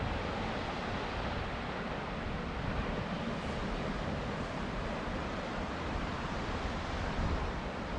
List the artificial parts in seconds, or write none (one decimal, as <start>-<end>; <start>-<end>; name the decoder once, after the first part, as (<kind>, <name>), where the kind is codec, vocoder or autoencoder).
none